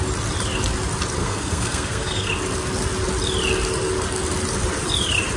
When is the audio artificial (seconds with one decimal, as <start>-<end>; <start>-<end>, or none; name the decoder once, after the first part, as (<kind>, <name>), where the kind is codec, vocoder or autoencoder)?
1.2-2.3 (codec, SNAC)